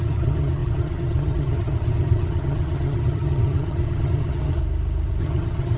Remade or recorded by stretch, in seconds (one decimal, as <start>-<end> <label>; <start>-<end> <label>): 0.0-4.6 remade; 4.6-5.2 recorded; 5.2-5.8 remade